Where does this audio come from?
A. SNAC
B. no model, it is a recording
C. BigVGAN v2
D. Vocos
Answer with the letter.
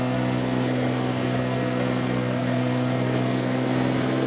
A